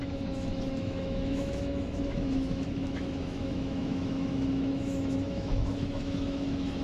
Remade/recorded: remade